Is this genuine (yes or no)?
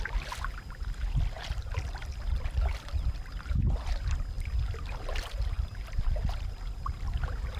yes